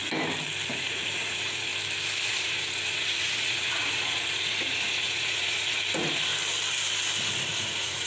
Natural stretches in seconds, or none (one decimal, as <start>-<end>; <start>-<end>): 0.0-0.7; 1.7-2.3; 6.3-7.2